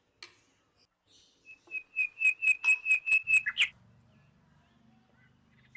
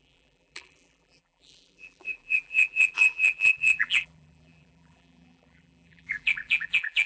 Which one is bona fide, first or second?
first